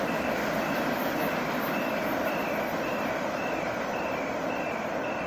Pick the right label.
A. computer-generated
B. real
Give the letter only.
B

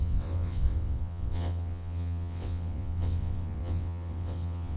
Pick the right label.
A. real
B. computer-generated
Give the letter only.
B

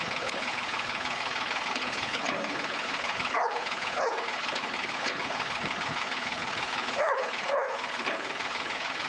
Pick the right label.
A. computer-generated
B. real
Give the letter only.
A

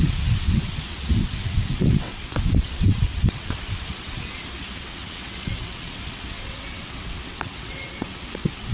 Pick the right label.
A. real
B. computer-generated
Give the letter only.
B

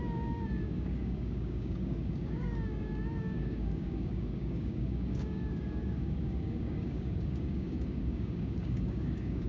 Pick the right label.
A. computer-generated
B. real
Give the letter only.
A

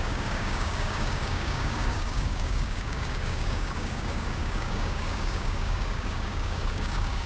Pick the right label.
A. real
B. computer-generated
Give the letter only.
B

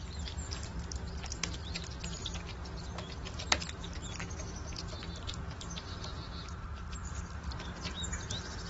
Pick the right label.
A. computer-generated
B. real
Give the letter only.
B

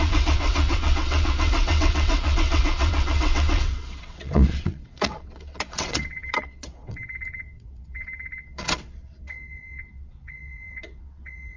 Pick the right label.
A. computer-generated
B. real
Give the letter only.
A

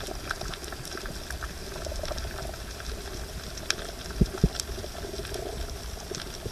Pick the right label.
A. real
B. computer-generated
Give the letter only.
A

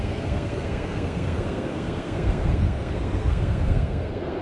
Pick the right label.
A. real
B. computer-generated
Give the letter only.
B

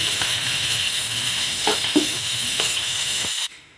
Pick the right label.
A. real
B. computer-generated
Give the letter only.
B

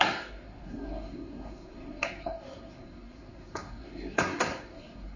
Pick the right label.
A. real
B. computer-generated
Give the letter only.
B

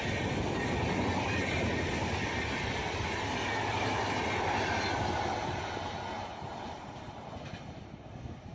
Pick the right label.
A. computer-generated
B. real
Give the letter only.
B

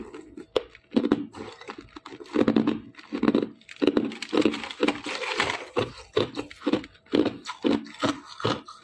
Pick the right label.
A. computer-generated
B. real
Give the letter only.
B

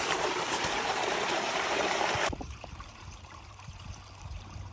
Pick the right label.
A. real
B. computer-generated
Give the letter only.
B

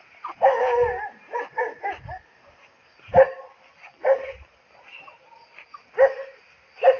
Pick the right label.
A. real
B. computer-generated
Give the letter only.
A